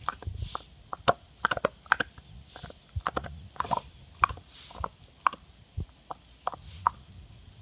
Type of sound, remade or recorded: recorded